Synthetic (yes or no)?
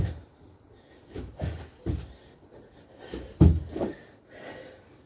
no